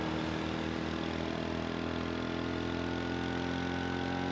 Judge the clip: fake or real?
real